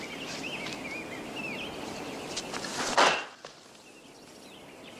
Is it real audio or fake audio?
real